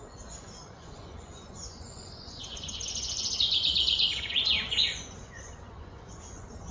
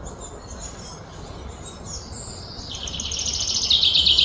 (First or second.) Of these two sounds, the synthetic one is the first